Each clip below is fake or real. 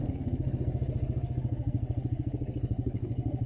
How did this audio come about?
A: fake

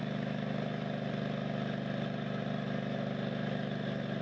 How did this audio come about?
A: real